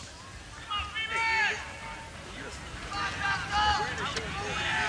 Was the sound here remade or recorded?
recorded